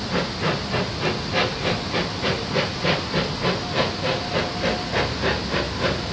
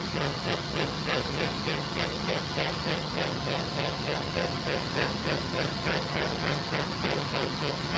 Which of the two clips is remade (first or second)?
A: second